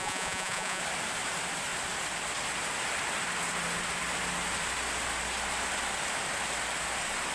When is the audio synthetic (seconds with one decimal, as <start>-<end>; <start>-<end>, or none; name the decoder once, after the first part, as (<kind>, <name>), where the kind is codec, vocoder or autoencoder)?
0.0-0.8 (vocoder, Vocos)